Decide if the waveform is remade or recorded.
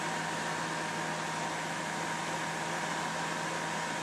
recorded